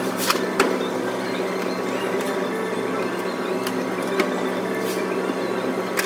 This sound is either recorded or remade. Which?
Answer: recorded